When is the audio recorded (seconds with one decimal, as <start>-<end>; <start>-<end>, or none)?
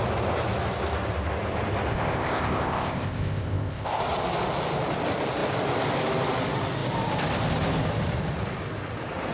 0.0-1.9; 4.0-9.3